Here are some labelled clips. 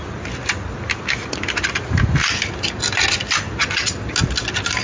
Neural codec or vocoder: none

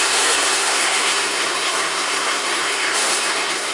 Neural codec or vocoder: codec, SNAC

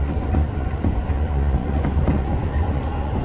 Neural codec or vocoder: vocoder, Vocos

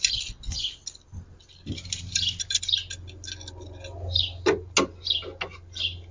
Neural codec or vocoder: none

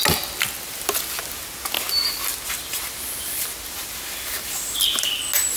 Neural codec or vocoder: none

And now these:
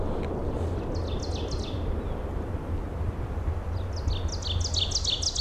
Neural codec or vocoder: none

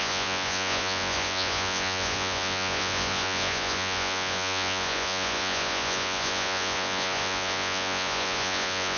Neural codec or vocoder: vocoder, Vocos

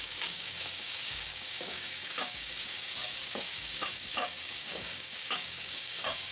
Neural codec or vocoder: codec, DAC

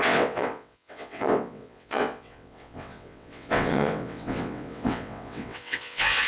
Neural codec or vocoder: vocoder, WaveNeXt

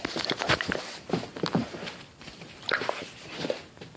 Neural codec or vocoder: none